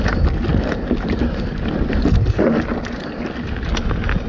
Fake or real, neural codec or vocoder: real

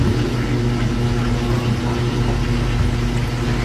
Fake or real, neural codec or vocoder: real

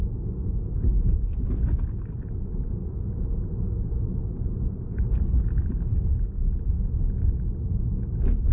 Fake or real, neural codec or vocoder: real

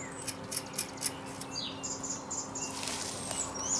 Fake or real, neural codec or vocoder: real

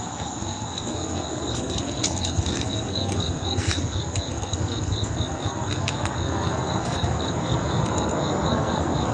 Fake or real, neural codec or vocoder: fake, codec, SNAC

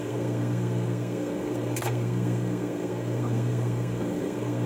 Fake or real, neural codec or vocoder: fake, codec, SNAC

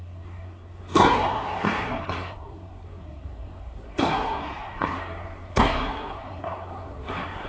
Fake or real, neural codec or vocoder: fake, codec, SNAC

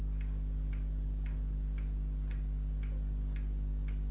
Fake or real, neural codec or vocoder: real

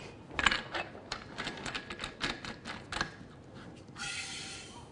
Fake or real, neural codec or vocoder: real